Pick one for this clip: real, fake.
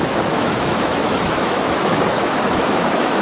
fake